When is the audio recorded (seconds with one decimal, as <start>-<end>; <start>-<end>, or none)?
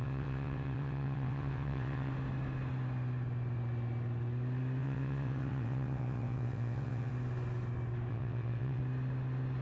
2.1-4.8; 7.1-8.1; 8.8-9.6